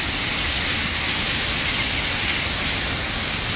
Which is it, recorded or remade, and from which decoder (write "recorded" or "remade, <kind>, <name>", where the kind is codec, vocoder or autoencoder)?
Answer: recorded